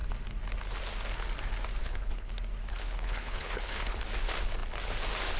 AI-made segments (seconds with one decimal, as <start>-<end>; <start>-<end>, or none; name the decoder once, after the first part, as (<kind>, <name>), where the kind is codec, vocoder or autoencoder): 1.8-2.3 (codec, HILCodec); 2.7-4.0